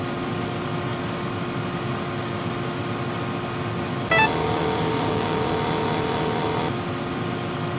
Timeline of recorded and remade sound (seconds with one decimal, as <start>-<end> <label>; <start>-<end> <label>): 0.0-4.4 recorded; 4.4-5.5 remade; 5.5-7.8 recorded

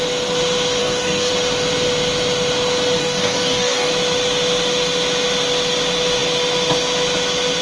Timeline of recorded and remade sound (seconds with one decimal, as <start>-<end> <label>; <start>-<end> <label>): 0.0-0.8 recorded; 0.8-1.3 remade; 1.3-3.0 recorded; 3.0-3.9 remade; 3.9-7.6 recorded